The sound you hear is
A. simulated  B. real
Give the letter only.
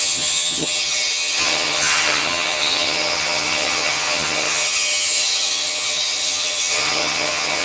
A